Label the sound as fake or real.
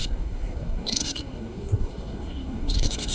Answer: fake